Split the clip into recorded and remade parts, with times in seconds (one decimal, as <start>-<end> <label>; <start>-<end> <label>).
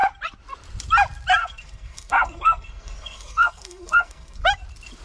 0.0-1.4 recorded; 1.4-4.4 remade; 4.4-5.0 recorded